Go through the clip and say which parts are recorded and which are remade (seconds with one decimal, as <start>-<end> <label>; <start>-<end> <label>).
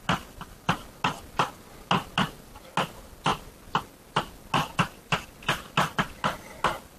0.0-7.0 recorded